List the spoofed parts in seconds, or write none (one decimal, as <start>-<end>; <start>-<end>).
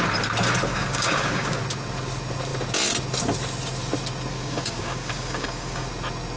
0.7-1.6; 4.3-5.9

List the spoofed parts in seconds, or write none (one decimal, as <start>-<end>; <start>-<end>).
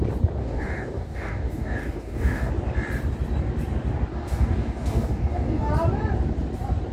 0.4-2.5; 4.1-5.7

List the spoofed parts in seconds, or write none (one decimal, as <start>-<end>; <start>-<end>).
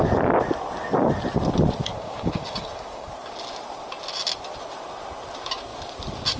1.9-3.1